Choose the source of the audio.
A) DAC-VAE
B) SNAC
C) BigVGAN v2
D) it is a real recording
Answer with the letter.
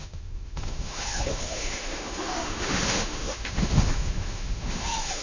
A